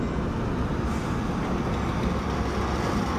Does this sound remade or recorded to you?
recorded